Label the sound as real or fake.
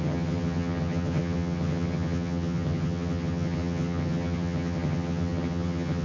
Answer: fake